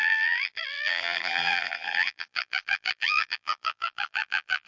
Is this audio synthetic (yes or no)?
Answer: yes